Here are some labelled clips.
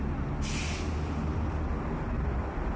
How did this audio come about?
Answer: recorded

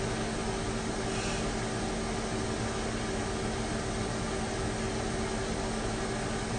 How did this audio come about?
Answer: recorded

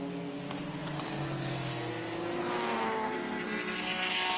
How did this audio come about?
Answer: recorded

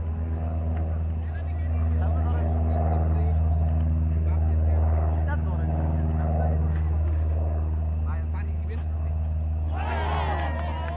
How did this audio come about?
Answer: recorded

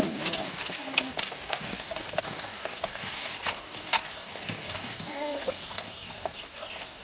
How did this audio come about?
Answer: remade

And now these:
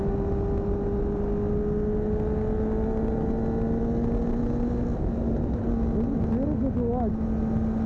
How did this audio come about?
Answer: recorded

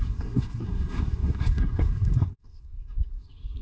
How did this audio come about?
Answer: remade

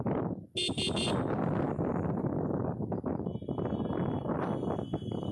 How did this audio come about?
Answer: recorded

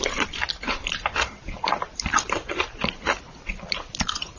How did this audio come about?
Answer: remade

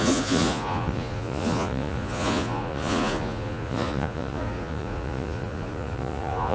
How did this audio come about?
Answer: remade